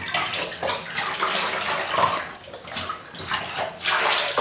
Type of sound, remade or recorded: recorded